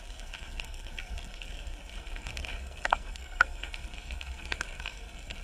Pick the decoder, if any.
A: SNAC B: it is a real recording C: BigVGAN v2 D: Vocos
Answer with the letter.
A